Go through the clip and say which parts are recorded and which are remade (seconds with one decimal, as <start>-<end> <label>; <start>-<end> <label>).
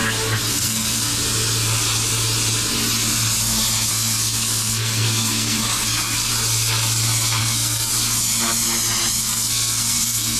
0.0-0.5 recorded; 0.5-1.1 remade; 1.1-3.9 recorded; 3.9-6.3 remade; 6.3-7.4 recorded; 7.4-7.9 remade; 7.9-9.2 recorded; 9.2-10.4 remade